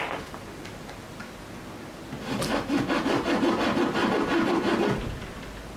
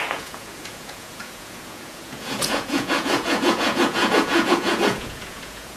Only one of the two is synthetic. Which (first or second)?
second